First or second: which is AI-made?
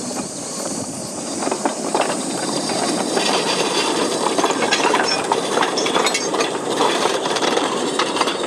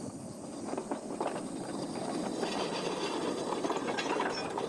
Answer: first